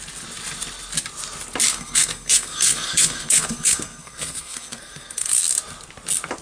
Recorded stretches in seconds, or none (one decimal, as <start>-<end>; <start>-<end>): 0.0-1.7; 5.4-6.4